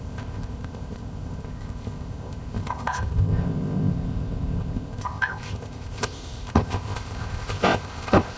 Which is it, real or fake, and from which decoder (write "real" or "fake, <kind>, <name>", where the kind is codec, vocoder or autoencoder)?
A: fake, codec, ZipCodec